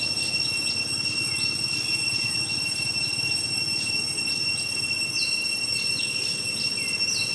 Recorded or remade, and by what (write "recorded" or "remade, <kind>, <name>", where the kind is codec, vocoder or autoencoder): recorded